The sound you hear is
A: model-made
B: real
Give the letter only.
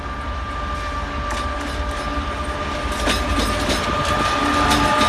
B